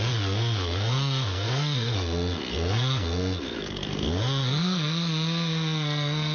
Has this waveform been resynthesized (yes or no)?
yes